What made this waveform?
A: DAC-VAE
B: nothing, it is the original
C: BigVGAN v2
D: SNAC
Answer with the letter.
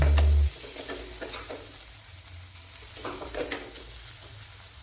B